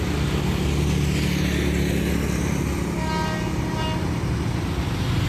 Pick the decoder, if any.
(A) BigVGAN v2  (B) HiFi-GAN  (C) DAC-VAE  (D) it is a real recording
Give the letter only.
D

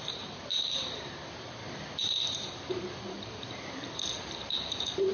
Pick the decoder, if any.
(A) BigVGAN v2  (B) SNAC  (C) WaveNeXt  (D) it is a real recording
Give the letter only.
A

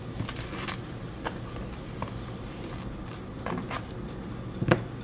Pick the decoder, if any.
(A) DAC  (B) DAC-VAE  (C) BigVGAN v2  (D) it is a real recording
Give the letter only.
D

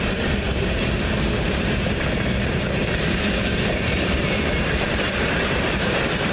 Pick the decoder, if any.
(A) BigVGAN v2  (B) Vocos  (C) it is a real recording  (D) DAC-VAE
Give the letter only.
A